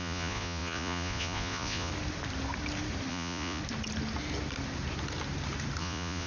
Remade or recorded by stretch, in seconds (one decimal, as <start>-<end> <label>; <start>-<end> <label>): 0.0-1.9 remade; 1.9-3.1 recorded; 3.1-3.6 remade; 3.6-5.8 recorded; 5.8-6.3 remade